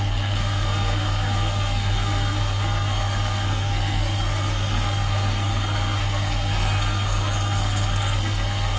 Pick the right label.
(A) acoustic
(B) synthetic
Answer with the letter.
B